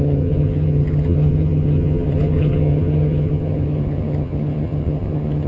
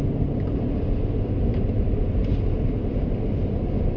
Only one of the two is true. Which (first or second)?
second